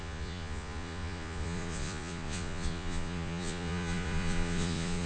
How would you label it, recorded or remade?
remade